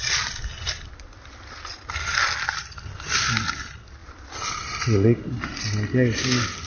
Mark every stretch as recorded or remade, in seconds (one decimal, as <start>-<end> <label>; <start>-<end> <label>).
0.0-6.7 recorded